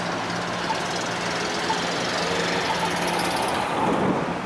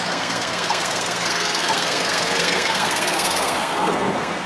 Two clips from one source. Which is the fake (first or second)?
second